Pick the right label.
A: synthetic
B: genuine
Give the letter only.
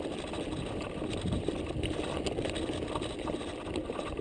B